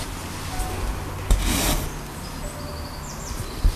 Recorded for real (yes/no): yes